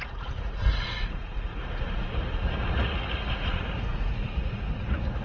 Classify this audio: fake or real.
fake